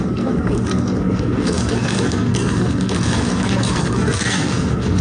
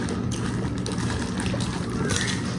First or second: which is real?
second